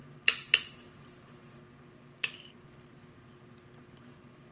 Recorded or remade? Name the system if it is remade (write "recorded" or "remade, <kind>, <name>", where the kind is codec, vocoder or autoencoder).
recorded